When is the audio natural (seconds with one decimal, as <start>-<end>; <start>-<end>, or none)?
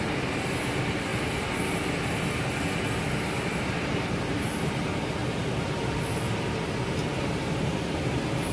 1.1-3.6; 5.2-8.5